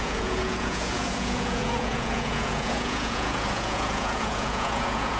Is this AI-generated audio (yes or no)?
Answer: yes